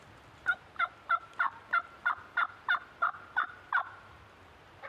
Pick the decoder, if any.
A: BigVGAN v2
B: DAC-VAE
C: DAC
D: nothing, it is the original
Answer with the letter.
A